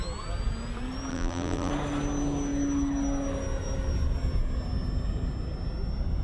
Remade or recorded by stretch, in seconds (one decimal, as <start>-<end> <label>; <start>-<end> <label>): 0.0-1.1 recorded; 1.1-1.7 remade; 1.7-6.2 recorded